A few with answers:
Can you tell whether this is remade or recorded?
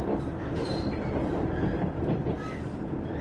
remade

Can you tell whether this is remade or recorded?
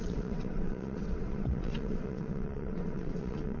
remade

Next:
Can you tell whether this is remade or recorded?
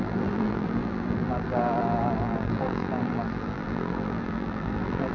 remade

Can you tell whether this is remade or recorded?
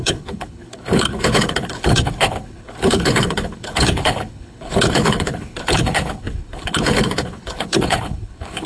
remade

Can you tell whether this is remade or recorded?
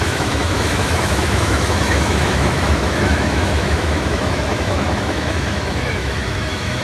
remade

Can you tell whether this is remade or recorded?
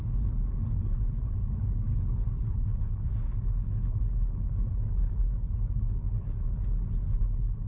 remade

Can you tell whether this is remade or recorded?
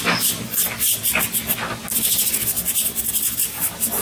recorded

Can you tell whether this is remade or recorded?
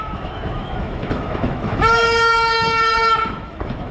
remade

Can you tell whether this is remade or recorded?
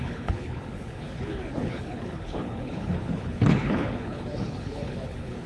remade